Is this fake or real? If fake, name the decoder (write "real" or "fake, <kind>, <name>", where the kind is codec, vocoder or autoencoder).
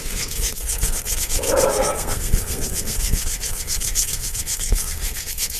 fake, codec, SNAC